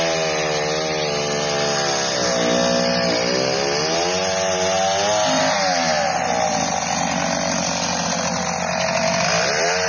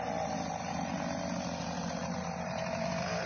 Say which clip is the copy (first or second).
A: second